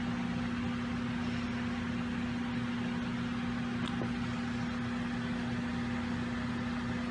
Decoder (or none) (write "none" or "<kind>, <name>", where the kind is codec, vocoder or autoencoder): none